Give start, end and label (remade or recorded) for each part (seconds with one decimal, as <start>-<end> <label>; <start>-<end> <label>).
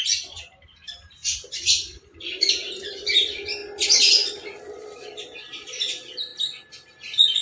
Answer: 0.0-3.6 remade; 3.6-4.8 recorded; 4.8-6.3 remade; 6.3-7.4 recorded